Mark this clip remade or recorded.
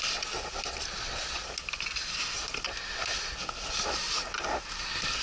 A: recorded